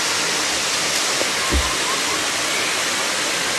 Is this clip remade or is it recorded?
recorded